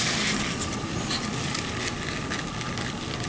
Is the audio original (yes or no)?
yes